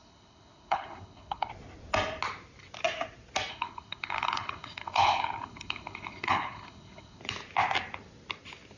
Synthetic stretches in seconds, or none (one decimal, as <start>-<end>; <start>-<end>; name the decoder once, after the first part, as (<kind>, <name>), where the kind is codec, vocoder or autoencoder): 0.0-1.5 (codec, HILCodec); 3.5-7.2